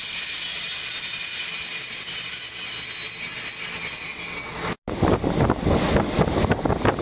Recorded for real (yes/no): yes